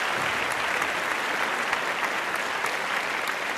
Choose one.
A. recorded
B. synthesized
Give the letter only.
A